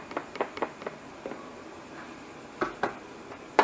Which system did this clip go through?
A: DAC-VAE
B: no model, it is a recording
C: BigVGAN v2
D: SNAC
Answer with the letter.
B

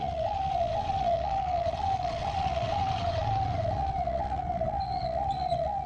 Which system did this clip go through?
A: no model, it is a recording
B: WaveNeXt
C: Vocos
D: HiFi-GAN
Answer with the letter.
B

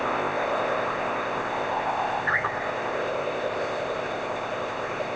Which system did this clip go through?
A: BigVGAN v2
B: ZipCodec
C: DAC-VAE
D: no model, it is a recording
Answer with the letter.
B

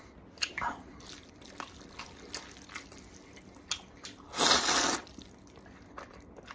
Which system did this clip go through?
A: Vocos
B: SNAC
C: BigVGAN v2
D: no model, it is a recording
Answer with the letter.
D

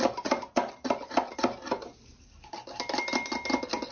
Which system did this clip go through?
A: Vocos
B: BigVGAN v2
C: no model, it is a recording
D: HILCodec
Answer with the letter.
C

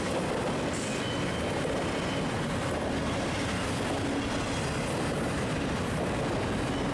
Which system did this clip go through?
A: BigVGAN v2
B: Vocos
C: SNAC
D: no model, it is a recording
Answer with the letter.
D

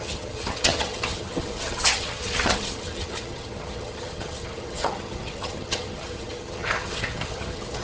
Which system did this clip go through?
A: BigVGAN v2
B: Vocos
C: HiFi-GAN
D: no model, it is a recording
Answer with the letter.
C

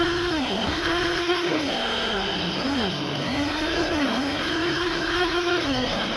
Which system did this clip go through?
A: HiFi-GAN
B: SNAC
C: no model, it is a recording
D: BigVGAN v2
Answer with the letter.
B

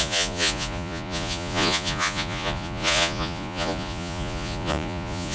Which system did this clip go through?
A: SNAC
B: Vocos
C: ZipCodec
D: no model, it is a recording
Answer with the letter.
B